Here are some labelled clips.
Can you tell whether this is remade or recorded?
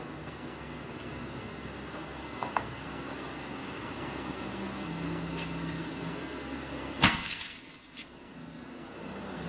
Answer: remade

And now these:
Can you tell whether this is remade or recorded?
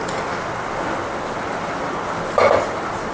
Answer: recorded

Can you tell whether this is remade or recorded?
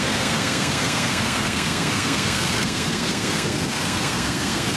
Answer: remade